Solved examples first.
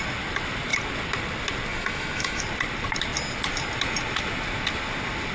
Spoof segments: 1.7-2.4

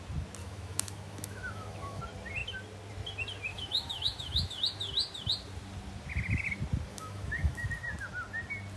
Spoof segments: 0.4-2.0; 3.5-4.6; 6.9-7.7

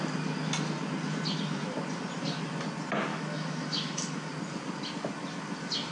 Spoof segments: 3.1-4.3

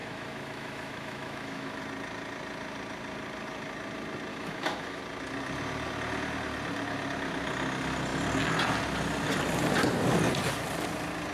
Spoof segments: 0.0-1.8; 4.3-5.0

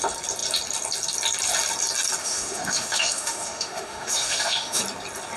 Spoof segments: 2.2-4.8

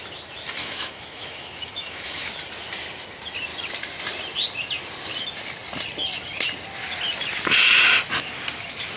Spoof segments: 0.6-2.3